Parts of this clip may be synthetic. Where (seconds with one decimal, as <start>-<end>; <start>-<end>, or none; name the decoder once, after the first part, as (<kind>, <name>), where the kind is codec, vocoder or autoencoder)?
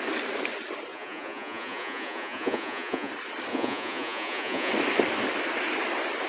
0.9-3.1 (vocoder, Vocos); 3.5-4.7